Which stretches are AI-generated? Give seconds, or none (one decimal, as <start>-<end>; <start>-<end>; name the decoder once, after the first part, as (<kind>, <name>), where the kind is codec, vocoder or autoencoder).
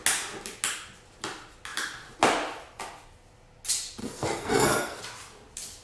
4.0-5.0 (codec, SNAC)